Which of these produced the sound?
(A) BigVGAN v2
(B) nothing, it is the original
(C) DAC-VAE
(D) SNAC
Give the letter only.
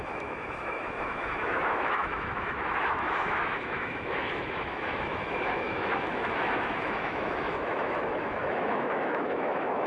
C